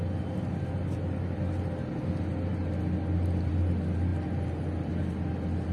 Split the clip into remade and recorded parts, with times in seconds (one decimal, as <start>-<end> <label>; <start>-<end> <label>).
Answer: 0.0-5.7 recorded